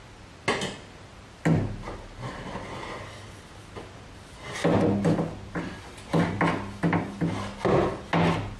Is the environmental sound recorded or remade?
recorded